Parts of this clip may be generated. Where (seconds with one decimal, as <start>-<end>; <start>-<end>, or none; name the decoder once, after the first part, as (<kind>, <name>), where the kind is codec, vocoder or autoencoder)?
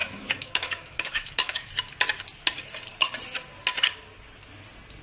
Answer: 0.0-1.7 (autoencoder, DAC-VAE)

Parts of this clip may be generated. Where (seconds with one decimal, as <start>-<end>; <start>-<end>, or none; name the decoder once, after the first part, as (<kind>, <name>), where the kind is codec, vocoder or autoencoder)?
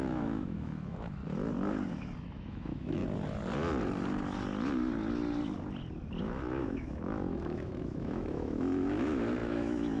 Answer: 0.0-1.2 (autoencoder, DAC-VAE); 2.2-3.0; 6.2-10.0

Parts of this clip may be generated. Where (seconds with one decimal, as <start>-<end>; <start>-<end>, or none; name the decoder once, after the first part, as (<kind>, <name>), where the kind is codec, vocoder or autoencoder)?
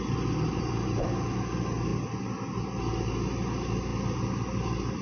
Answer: none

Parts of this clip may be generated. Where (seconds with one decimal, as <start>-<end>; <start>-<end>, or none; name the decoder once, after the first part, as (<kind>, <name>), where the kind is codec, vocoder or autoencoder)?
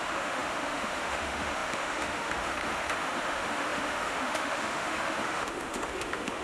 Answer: 0.0-6.4 (autoencoder, DAC-VAE)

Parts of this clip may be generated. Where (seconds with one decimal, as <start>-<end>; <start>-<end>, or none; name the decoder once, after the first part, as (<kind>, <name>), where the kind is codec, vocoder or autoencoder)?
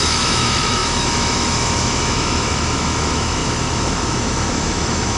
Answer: 0.0-5.2 (autoencoder, DAC-VAE)